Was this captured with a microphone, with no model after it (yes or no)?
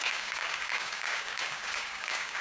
no